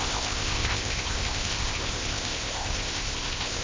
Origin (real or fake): fake